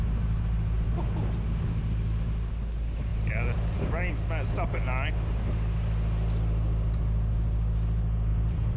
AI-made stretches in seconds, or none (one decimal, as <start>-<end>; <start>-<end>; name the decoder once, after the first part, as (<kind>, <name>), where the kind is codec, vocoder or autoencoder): 3.1-4.1 (vocoder, BigVGAN v2); 8.3-8.8